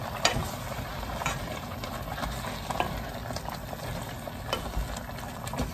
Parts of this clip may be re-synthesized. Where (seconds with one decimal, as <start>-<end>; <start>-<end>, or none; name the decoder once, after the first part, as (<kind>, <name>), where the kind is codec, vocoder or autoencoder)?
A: 0.9-1.9 (vocoder, BigVGAN v2)

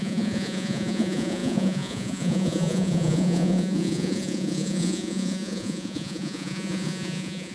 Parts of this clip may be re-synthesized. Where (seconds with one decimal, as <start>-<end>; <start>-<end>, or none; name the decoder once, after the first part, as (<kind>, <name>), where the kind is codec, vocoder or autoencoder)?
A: 0.0-7.5 (vocoder, Vocos)